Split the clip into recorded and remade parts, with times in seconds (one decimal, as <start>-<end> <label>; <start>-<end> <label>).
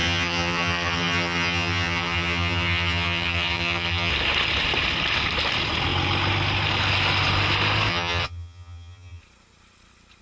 0.0-4.1 remade; 4.1-7.9 recorded; 7.9-9.2 remade; 9.2-10.2 recorded